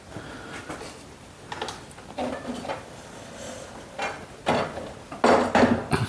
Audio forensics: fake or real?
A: real